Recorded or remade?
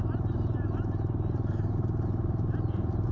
recorded